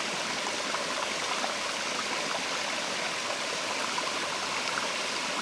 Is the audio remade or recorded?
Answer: recorded